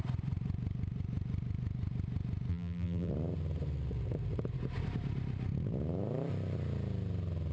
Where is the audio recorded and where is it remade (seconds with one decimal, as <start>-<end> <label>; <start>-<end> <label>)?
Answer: 0.0-2.5 recorded; 2.5-3.1 remade; 3.1-7.5 recorded